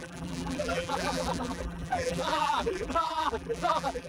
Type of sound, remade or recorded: remade